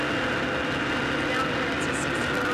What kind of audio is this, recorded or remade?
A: recorded